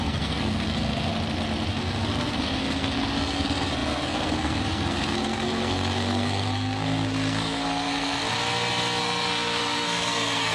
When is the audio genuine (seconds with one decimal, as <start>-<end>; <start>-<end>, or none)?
1.1-1.7; 8.2-9.0